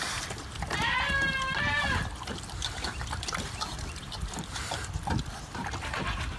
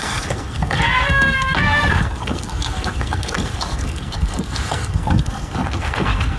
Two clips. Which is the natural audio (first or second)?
first